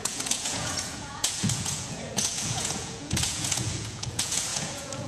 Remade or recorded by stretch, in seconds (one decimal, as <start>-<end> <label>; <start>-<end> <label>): 0.0-5.1 remade